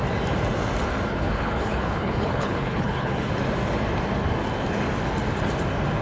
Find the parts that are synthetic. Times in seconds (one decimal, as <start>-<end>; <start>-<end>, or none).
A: 1.1-3.3